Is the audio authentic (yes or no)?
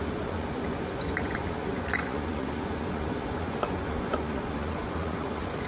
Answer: no